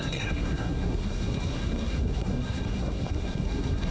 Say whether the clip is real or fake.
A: fake